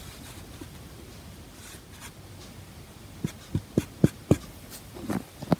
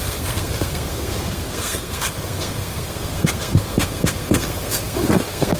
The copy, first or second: second